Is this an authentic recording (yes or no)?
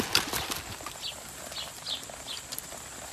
yes